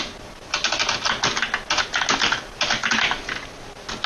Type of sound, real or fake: real